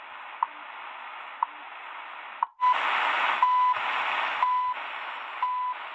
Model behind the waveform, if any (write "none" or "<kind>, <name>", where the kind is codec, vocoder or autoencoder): none